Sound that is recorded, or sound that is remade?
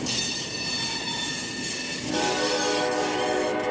recorded